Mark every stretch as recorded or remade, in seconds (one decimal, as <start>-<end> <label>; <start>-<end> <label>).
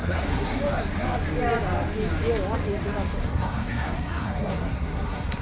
0.0-0.6 remade; 0.6-3.2 recorded; 3.2-5.4 remade